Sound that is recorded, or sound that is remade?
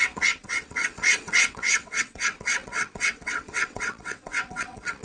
remade